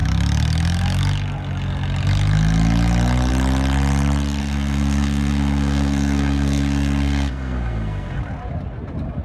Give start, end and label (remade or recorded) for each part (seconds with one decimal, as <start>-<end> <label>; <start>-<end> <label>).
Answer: 0.0-4.4 recorded; 4.4-8.2 remade; 8.2-9.2 recorded